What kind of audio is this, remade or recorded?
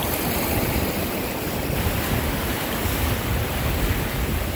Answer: recorded